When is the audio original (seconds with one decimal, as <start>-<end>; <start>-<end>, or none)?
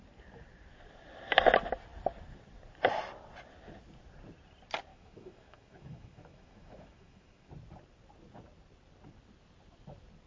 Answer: 0.0-4.9; 7.5-10.3